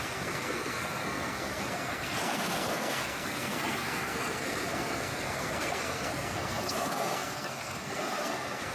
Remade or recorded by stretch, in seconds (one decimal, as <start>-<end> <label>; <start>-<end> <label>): 0.0-8.7 remade